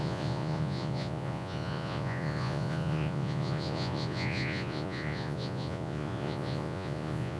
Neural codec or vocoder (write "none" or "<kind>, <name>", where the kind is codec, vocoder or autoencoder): vocoder, Vocos